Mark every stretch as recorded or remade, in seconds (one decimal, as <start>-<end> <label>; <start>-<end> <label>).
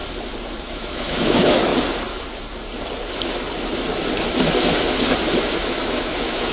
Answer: 0.0-0.6 recorded; 0.6-1.7 remade; 1.7-5.6 recorded; 5.6-6.5 remade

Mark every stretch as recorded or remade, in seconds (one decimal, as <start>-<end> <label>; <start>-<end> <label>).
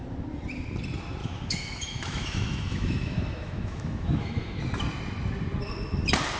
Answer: 0.0-1.2 recorded; 1.2-4.6 remade; 4.6-6.4 recorded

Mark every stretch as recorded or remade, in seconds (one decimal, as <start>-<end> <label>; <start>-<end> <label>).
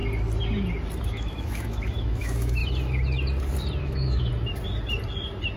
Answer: 0.0-1.0 recorded; 1.0-2.6 remade; 2.6-3.8 recorded; 3.8-4.3 remade; 4.3-5.6 recorded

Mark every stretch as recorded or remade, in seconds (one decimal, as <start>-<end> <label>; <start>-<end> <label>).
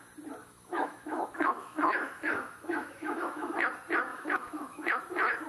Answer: 0.0-0.4 recorded; 0.4-3.5 remade; 3.5-4.1 recorded; 4.1-5.0 remade; 5.0-5.5 recorded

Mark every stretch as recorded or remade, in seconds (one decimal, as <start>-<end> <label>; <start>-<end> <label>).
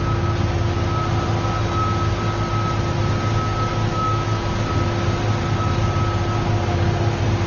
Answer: 0.0-3.7 recorded; 3.7-4.5 remade; 4.5-7.5 recorded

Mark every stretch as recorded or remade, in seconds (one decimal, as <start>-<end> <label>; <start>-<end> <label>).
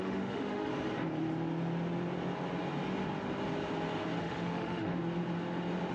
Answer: 0.0-0.7 remade; 0.7-4.2 recorded; 4.2-4.9 remade; 4.9-5.9 recorded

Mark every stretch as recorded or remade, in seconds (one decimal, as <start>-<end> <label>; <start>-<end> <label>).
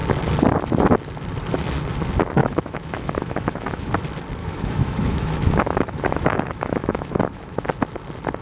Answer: 0.0-2.4 recorded; 2.4-3.9 remade; 3.9-4.4 recorded; 4.4-7.7 remade; 7.7-8.4 recorded